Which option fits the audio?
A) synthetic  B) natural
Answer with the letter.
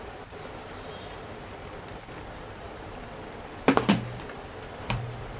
A